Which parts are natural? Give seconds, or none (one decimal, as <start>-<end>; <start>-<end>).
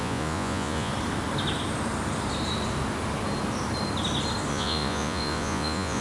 0.9-4.5